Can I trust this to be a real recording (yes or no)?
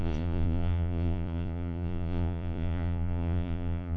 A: no